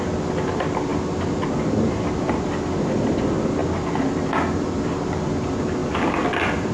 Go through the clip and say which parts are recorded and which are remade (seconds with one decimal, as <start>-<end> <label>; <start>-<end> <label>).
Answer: 0.0-6.7 recorded